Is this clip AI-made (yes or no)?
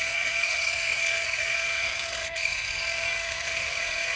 yes